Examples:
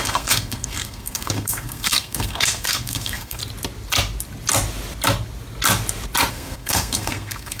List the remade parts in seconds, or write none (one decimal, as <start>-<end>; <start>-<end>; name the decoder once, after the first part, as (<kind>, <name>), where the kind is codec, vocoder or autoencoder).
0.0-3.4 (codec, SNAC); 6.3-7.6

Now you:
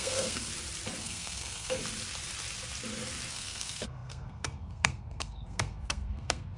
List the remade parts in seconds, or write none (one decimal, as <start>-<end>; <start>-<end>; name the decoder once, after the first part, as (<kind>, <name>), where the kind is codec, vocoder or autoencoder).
0.0-0.5 (codec, SNAC); 1.0-1.8; 3.3-6.6

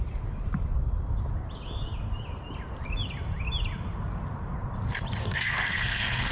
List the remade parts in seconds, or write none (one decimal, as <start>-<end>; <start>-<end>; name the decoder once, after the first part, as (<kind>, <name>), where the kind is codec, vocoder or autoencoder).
5.2-6.3 (codec, SNAC)